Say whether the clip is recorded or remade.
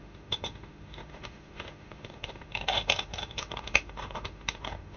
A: remade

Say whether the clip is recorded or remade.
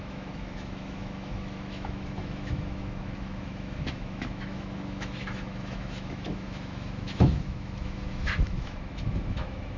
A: remade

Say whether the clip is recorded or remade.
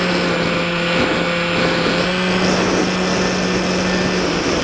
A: recorded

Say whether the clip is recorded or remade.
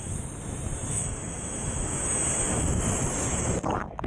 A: remade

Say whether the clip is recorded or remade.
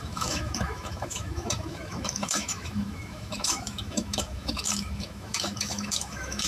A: remade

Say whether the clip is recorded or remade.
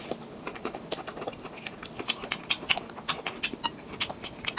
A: recorded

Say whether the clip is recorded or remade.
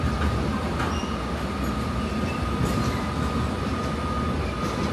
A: recorded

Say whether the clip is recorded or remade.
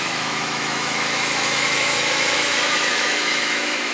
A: remade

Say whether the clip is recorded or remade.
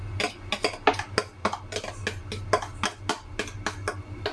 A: recorded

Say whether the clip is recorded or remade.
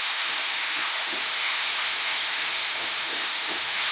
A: remade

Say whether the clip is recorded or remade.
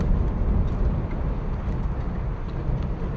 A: recorded